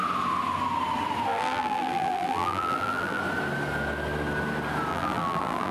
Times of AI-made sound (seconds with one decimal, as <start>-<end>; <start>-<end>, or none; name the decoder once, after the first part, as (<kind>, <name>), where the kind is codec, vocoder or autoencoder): 1.3-3.2 (vocoder, BigVGAN v2); 4.9-5.7